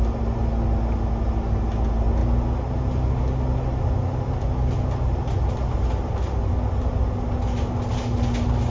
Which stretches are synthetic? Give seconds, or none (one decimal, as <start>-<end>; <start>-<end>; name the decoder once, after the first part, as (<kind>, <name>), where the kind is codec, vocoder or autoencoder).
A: none